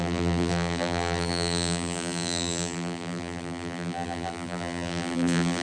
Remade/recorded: remade